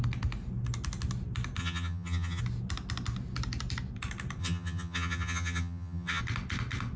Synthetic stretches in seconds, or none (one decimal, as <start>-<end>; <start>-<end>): 1.6-2.4; 4.4-6.2

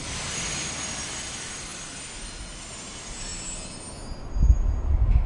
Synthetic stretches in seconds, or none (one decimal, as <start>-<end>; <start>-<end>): none

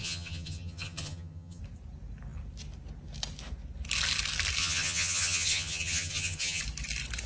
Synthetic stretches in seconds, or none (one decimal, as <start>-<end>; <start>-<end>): 0.0-1.6; 4.6-6.6

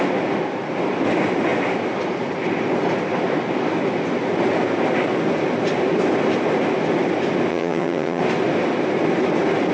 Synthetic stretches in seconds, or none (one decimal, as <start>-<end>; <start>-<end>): 7.5-8.2

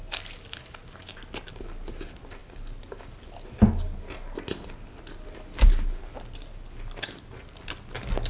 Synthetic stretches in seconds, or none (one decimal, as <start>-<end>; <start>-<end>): none

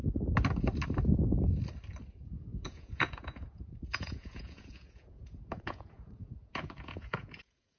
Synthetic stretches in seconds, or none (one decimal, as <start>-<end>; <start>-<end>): 2.1-7.8